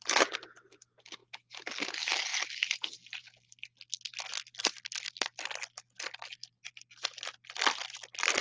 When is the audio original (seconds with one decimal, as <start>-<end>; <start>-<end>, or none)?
0.0-8.4